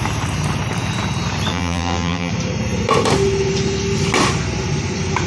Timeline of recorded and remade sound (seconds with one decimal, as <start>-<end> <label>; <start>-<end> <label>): 0.0-1.5 recorded; 1.5-2.3 remade; 2.3-5.3 recorded